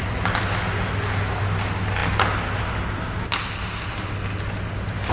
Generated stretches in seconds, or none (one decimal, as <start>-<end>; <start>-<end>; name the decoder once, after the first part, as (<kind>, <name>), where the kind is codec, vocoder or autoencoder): none